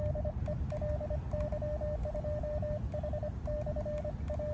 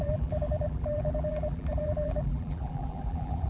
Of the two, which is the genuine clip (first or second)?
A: first